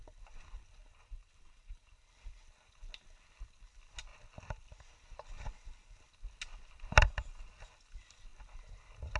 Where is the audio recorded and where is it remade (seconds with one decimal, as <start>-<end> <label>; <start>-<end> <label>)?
0.0-0.8 recorded; 0.8-2.1 remade; 2.1-6.5 recorded; 6.5-7.5 remade; 7.5-9.2 recorded